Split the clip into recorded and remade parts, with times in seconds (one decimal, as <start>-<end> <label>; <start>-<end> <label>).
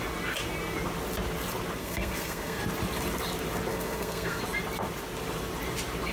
0.0-1.8 recorded; 1.8-2.6 remade; 2.6-3.7 recorded; 3.7-4.4 remade; 4.4-6.1 recorded